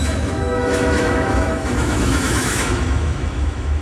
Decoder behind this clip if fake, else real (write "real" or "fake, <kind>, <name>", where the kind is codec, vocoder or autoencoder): fake, autoencoder, DAC-VAE